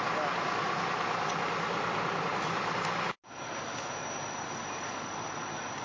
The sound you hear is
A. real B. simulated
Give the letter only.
A